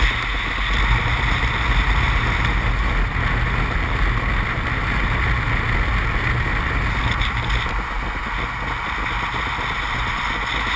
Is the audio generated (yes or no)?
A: no